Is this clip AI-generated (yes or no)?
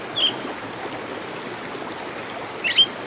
no